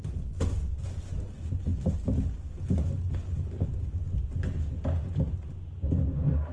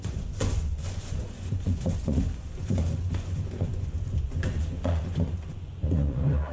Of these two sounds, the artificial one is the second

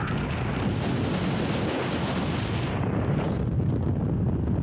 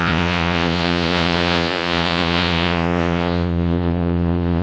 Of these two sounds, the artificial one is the second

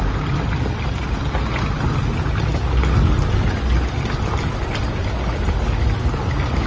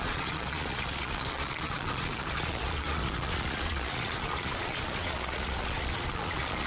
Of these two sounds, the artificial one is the second